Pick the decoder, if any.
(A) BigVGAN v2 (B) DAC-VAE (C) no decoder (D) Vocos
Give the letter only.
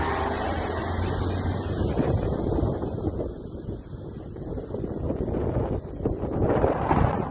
C